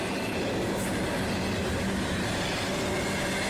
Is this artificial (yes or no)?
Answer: no